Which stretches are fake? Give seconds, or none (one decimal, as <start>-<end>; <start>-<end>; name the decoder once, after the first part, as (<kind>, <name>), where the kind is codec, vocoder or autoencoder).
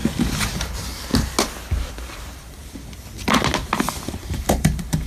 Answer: 0.6-1.1 (vocoder, BigVGAN v2); 1.9-2.6; 4.2-5.1